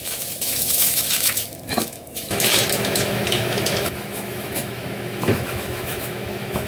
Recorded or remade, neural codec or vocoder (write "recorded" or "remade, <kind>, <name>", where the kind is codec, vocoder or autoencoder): remade, autoencoder, DAC-VAE